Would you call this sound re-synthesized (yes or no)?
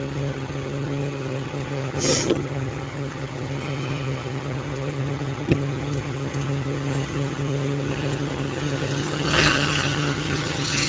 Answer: yes